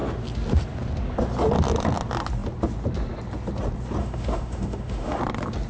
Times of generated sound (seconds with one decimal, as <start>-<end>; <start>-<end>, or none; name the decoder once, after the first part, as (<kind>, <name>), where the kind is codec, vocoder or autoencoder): 4.0-5.2 (autoencoder, DAC-VAE)